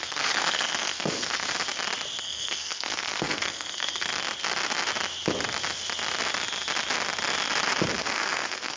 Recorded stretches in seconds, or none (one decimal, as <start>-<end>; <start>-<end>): 1.4-2.2; 4.1-8.0